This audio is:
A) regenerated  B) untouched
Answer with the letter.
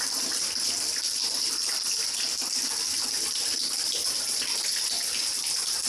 A